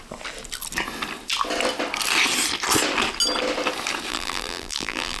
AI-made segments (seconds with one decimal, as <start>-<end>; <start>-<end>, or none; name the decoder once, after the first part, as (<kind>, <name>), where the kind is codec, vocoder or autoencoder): 4.1-5.2 (vocoder, BigVGAN v2)